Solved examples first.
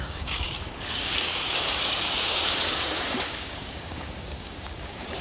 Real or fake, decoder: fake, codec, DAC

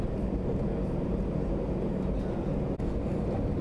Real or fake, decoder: real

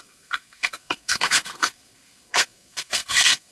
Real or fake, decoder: fake, codec, SNAC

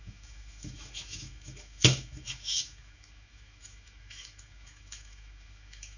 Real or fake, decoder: fake, autoencoder, DAC-VAE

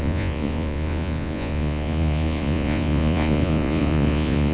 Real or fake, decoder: fake, vocoder, Vocos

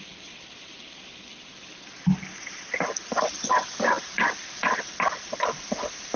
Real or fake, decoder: real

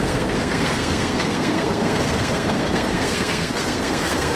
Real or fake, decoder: fake, codec, SNAC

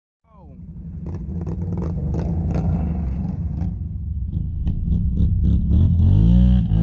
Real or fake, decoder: real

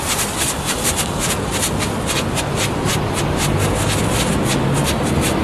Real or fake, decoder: real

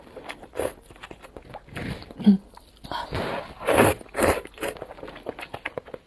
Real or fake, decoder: real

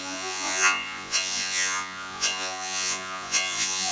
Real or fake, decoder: fake, vocoder, Vocos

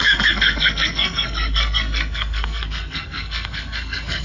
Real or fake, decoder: fake, codec, SNAC